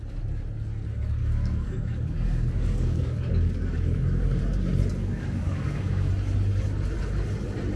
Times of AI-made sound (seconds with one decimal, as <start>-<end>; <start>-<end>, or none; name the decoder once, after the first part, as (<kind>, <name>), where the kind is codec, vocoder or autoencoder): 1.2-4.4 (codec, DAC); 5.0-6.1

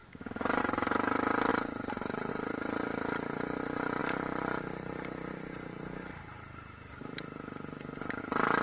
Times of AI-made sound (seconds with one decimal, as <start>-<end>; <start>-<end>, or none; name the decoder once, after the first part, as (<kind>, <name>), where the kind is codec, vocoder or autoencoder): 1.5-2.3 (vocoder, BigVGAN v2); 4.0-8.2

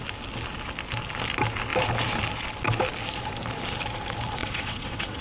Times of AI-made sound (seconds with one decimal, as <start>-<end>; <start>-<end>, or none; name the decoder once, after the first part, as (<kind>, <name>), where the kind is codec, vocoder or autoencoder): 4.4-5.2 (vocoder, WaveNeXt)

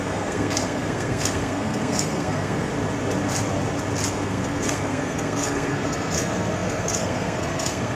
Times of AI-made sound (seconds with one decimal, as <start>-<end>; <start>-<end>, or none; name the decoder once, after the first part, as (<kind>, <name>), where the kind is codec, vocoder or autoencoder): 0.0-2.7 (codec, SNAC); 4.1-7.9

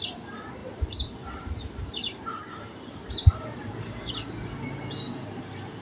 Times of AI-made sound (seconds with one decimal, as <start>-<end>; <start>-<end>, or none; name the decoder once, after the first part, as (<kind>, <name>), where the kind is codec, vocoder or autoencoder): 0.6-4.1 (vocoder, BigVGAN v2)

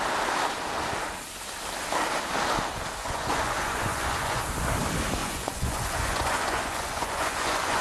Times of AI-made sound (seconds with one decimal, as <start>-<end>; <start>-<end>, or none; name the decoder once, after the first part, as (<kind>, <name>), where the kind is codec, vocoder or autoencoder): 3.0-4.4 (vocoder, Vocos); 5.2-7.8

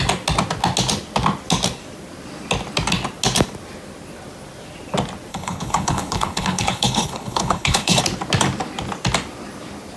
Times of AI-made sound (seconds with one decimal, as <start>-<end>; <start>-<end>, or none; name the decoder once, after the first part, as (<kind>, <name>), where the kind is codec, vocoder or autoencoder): 5.3-8.0 (codec, HILCodec)